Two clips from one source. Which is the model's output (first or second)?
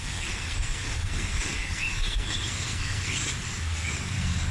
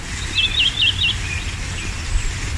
first